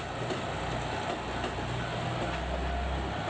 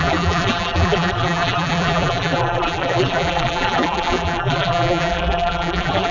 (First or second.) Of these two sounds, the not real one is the second